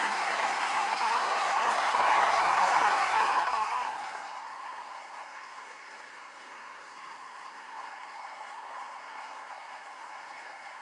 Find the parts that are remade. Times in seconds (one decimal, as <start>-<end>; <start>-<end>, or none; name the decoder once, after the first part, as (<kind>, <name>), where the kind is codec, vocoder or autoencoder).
0.0-10.8 (codec, SNAC)